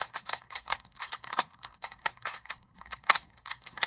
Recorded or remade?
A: remade